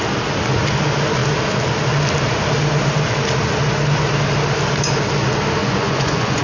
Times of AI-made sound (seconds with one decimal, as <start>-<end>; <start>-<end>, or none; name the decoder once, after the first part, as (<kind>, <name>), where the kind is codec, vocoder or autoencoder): 5.6-6.4 (vocoder, Vocos)